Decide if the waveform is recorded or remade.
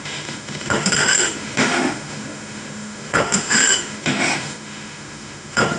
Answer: remade